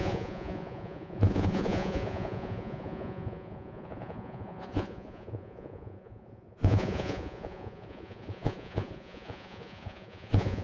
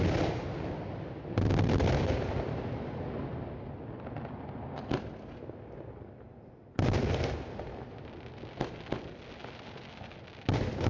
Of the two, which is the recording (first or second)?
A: second